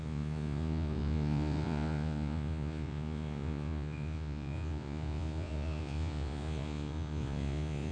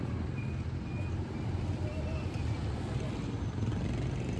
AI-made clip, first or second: first